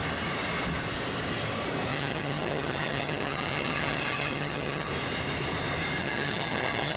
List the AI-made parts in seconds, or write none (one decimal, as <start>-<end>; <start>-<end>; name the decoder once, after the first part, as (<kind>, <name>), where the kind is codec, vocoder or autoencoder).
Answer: 1.9-4.9 (vocoder, HiFi-GAN); 6.0-7.0